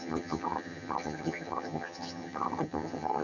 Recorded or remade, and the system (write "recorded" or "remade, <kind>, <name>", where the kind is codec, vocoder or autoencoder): remade, vocoder, HiFi-GAN